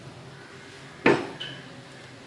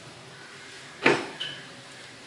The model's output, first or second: second